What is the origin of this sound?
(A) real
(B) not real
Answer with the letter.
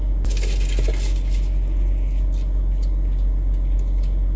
A